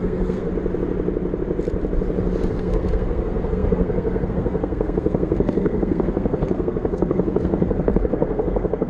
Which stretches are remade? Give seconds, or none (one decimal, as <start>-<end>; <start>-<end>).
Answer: 0.0-0.5; 2.5-8.9